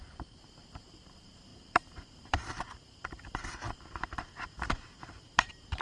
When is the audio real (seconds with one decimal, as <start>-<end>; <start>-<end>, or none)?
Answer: none